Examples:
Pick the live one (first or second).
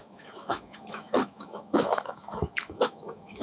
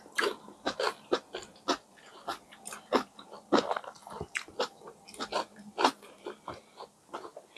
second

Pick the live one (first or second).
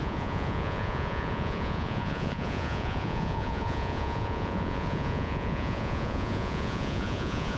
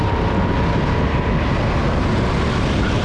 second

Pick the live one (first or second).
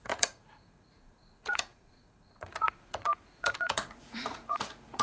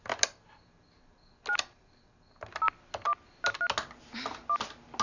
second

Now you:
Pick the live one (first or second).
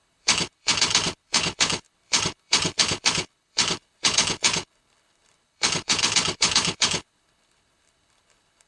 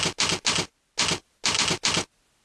second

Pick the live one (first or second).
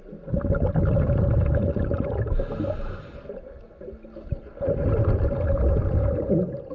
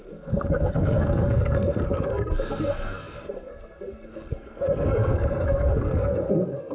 first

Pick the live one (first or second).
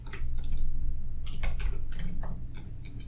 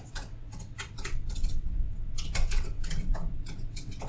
first